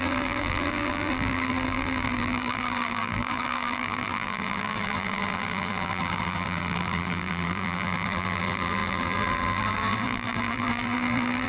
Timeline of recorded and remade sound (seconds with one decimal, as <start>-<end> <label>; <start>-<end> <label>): 0.0-11.5 remade